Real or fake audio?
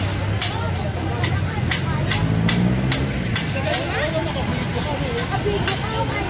real